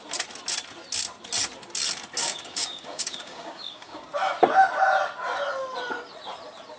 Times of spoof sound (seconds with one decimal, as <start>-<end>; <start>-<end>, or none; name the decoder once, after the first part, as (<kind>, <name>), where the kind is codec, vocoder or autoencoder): 2.2-4.1 (codec, DAC)